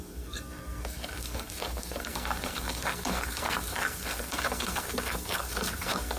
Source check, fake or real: fake